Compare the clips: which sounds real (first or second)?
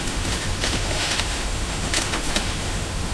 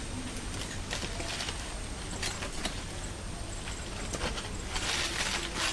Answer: second